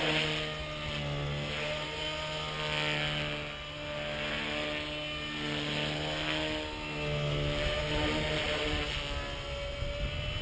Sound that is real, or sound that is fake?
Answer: real